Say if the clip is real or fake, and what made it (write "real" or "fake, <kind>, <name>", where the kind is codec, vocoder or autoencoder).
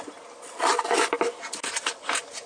real